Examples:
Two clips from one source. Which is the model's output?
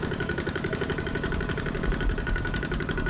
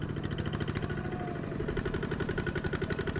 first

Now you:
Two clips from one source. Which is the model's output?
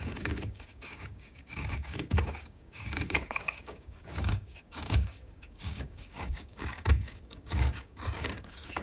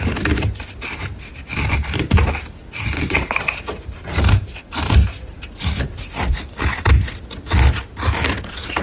first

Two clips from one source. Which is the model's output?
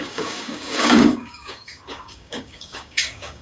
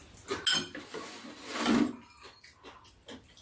first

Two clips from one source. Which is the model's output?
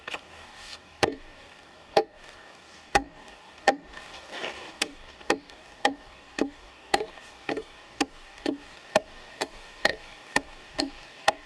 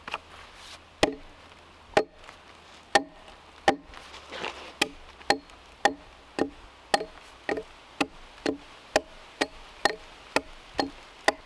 first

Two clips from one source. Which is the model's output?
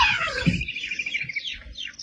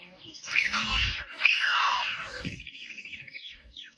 second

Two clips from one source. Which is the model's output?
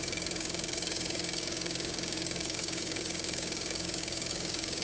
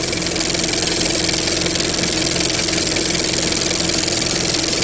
first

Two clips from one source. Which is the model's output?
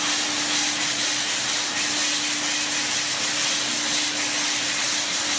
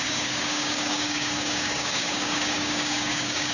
second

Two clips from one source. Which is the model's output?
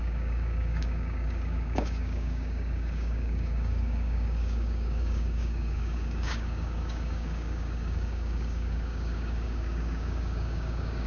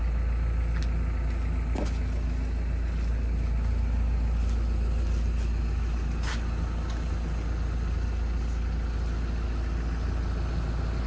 first